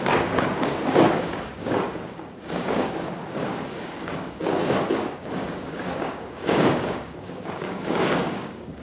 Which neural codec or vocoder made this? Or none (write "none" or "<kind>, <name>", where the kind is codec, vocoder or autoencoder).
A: codec, DAC